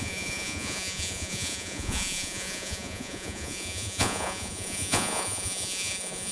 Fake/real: fake